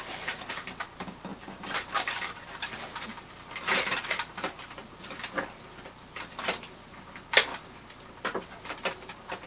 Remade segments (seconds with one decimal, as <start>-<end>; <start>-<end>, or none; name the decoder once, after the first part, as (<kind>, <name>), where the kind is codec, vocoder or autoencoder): none